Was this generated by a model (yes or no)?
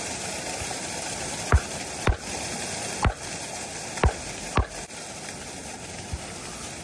no